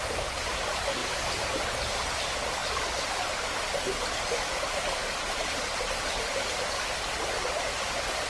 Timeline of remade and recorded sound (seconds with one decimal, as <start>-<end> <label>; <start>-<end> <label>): 0.0-8.3 recorded